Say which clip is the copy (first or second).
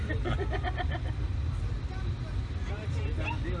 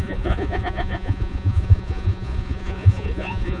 second